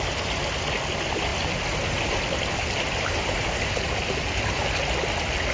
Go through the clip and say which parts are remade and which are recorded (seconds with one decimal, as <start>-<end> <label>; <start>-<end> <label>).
0.0-5.5 recorded